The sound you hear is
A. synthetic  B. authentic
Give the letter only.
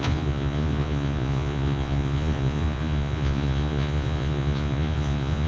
A